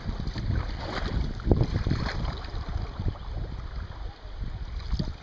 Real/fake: real